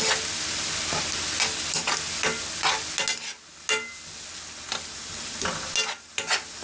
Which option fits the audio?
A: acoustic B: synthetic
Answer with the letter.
A